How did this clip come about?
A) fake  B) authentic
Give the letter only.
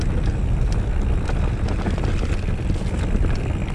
B